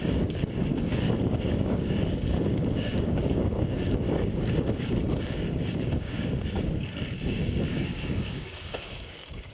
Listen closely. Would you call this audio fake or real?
fake